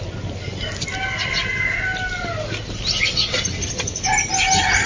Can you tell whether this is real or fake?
real